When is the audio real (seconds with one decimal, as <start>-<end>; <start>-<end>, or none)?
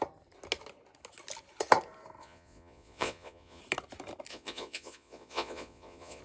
0.0-2.2; 3.6-4.3